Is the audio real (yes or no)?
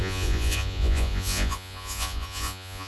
no